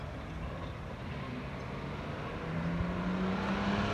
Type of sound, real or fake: real